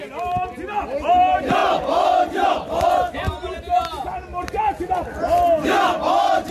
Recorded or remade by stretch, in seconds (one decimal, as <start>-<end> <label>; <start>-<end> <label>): 0.0-1.6 recorded; 1.6-3.6 remade; 3.6-4.3 recorded; 4.3-4.8 remade; 4.8-6.5 recorded